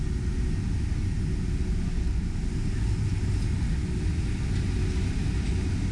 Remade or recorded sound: recorded